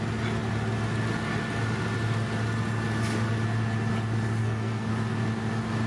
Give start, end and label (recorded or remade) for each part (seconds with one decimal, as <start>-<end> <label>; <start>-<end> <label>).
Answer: 0.0-4.4 recorded; 4.4-4.9 remade; 4.9-5.9 recorded